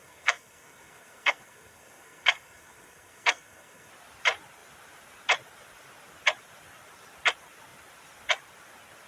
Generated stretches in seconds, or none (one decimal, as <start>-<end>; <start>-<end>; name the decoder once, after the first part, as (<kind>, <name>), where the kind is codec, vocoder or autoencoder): 0.0-3.9 (codec, SNAC)